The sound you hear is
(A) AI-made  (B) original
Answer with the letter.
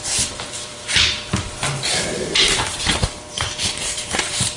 A